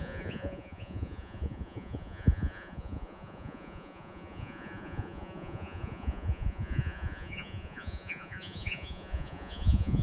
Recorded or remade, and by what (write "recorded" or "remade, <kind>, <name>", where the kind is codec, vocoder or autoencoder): remade, vocoder, Vocos